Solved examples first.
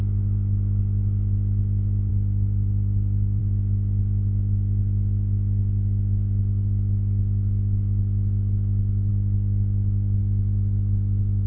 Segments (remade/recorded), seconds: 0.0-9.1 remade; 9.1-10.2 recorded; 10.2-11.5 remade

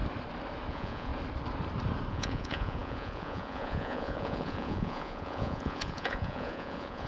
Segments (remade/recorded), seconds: 0.0-0.7 recorded; 0.7-1.1 remade; 1.1-2.1 recorded; 2.1-7.1 remade

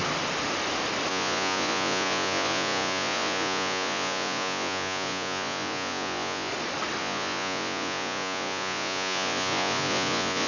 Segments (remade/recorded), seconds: 0.0-1.1 recorded; 1.1-6.5 remade; 6.5-7.0 recorded; 7.0-10.5 remade

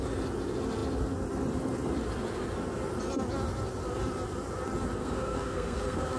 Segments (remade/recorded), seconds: 0.0-5.0 recorded; 5.0-6.2 remade

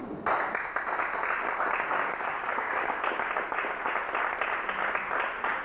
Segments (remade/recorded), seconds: 0.0-1.9 recorded; 1.9-3.0 remade; 3.0-5.6 recorded

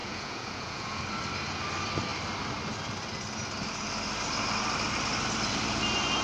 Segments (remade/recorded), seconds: 0.0-1.0 remade; 1.0-6.2 recorded

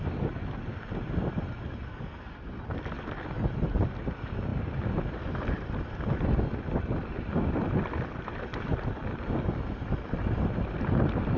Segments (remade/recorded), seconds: 0.0-11.4 recorded